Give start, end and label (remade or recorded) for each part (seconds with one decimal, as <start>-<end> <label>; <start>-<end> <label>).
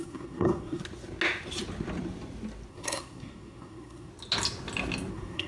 0.0-0.8 remade; 0.8-2.7 recorded; 2.7-4.1 remade; 4.1-5.1 recorded; 5.1-5.5 remade